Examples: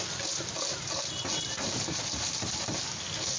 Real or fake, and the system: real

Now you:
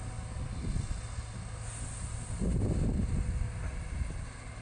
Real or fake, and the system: real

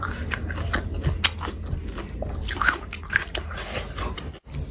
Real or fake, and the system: real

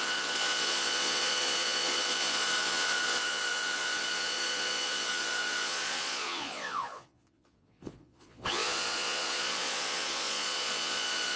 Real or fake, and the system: fake, vocoder, Vocos